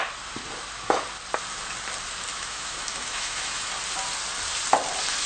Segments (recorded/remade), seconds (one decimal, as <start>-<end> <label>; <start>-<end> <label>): 0.0-2.3 recorded; 2.3-3.7 remade; 3.7-5.3 recorded